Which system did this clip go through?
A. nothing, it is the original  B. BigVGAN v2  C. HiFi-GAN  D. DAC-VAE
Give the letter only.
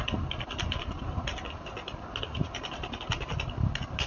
A